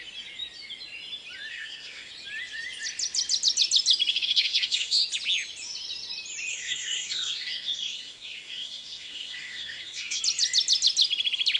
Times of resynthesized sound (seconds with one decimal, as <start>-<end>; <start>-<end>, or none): 1.5-2.1; 4.1-5.0; 6.5-10.2